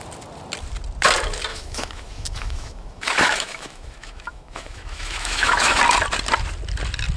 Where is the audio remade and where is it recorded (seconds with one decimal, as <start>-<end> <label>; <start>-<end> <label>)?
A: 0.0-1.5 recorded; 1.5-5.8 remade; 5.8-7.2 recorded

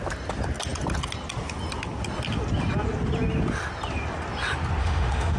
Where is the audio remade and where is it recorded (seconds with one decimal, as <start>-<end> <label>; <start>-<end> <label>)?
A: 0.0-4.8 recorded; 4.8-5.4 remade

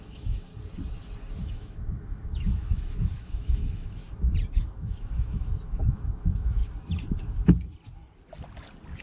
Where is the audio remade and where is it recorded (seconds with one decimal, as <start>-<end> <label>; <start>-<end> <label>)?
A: 0.0-0.5 remade; 0.5-1.4 recorded; 1.4-4.0 remade; 4.0-4.5 recorded; 4.5-6.6 remade; 6.6-9.0 recorded

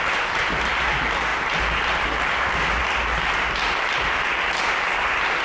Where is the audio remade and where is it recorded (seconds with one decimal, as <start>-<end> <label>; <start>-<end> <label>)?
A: 0.0-5.4 recorded

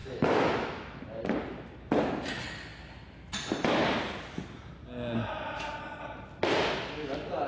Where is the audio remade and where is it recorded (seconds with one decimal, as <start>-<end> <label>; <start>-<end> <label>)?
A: 0.0-1.0 remade; 1.0-7.5 recorded

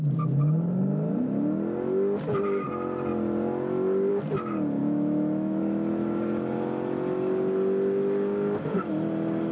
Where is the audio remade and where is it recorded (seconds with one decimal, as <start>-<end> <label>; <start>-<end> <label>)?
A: 0.0-4.8 recorded; 4.8-5.6 remade; 5.6-9.5 recorded